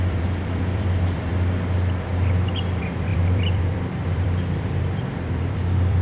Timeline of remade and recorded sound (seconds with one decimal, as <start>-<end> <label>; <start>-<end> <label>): 0.0-1.3 remade; 1.3-2.7 recorded; 2.7-6.0 remade